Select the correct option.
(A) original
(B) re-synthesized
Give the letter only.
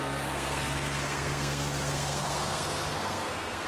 B